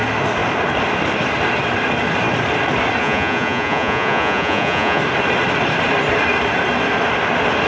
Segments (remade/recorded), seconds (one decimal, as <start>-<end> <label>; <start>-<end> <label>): 0.0-3.0 recorded; 3.0-5.0 remade; 5.0-7.7 recorded